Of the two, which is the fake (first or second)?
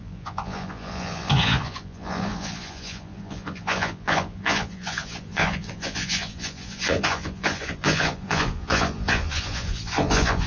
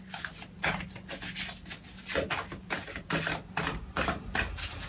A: first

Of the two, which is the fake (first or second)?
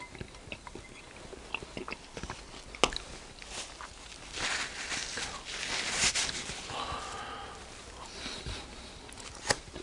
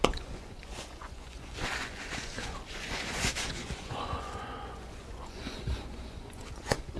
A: second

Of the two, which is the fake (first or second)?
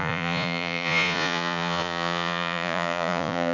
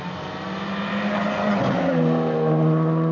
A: first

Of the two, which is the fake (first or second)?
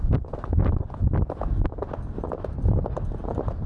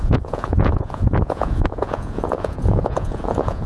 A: second